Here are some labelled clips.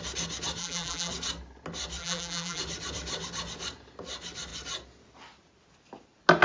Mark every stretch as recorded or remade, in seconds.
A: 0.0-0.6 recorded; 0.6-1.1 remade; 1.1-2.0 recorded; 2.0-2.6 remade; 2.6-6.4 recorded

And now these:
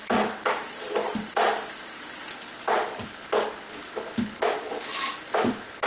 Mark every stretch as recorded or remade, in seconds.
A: 0.0-5.9 recorded

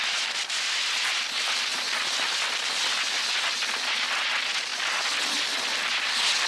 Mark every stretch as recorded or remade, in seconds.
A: 0.0-6.5 recorded

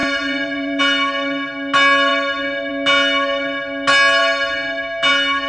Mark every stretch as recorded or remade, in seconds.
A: 0.0-0.8 remade; 0.8-5.5 recorded

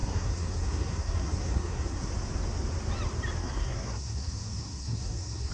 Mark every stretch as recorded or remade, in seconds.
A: 0.0-2.1 remade; 2.1-3.4 recorded; 3.4-5.5 remade

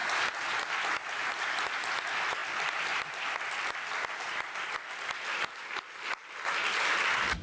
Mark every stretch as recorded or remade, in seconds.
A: 0.0-7.4 recorded